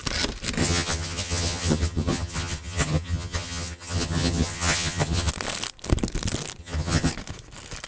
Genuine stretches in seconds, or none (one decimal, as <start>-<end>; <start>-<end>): 0.0-0.6; 5.3-6.6; 7.1-7.9